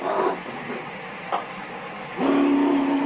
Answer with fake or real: real